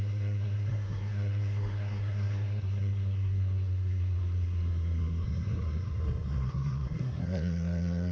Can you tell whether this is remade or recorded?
remade